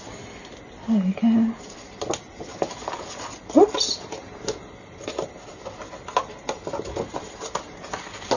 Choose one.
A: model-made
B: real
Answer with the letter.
B